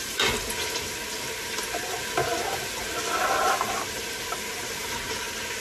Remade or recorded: recorded